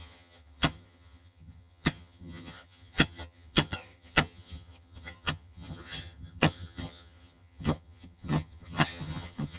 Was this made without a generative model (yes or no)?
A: no